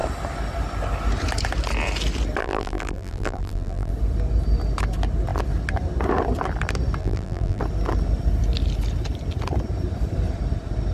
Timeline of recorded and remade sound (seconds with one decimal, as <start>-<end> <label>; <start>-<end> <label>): 0.0-2.4 recorded; 2.4-3.9 remade; 3.9-7.0 recorded; 7.0-7.6 remade; 7.6-10.9 recorded